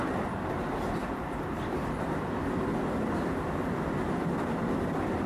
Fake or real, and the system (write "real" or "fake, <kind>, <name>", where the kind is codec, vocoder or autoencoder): real